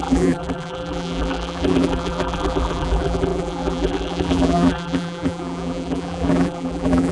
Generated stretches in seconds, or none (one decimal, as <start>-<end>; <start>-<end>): 0.0-7.1